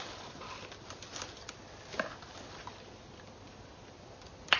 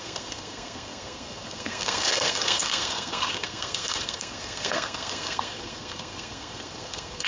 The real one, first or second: first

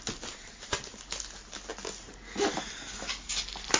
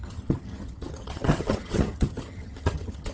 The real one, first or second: first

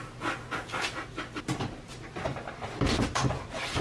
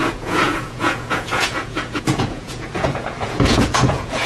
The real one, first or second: first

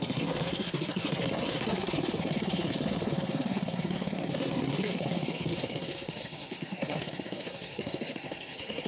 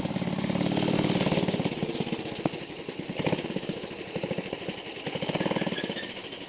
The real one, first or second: second